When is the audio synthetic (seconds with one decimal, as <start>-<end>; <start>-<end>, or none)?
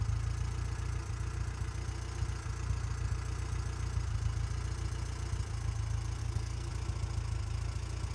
6.2-6.7